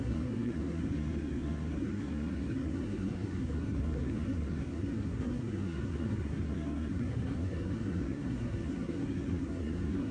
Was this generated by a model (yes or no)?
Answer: yes